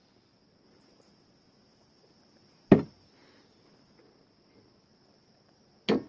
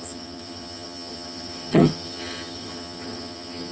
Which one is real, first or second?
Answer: first